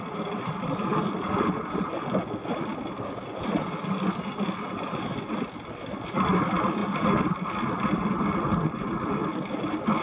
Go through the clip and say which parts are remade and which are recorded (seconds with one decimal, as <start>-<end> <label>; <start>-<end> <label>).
0.0-10.0 recorded